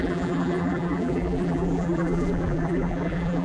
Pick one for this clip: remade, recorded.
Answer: remade